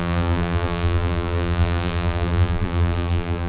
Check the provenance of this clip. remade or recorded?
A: remade